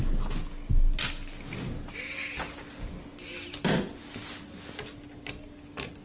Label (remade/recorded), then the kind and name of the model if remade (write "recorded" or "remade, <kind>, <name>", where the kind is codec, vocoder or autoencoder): recorded